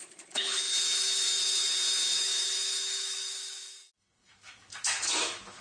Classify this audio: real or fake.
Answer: fake